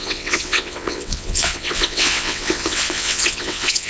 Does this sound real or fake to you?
fake